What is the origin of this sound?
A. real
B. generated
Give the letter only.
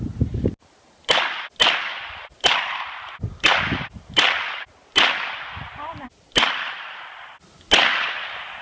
A